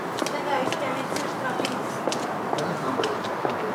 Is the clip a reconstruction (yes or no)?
no